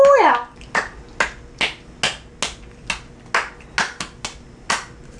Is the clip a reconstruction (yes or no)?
no